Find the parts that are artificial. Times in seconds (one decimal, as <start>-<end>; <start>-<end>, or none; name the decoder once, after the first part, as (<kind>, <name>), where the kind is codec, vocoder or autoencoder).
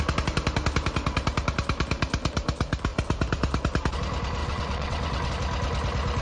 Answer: 4.4-5.3 (vocoder, WaveNeXt)